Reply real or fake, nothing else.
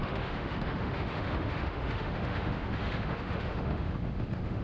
fake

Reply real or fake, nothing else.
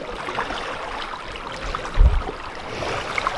real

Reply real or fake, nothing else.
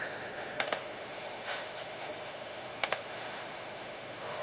fake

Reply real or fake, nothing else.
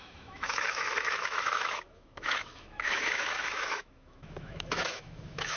fake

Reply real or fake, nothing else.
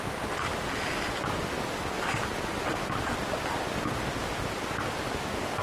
real